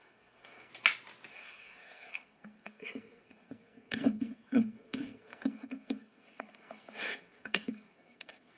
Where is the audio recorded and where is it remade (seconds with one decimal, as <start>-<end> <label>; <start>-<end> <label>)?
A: 0.0-0.7 remade; 0.7-1.3 recorded; 1.3-8.6 remade